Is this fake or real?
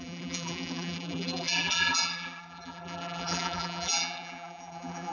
fake